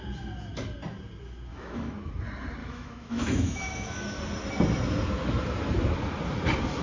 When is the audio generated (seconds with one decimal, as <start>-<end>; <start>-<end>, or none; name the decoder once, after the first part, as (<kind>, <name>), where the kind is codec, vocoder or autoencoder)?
1.5-2.1 (autoencoder, DAC-VAE); 2.6-4.2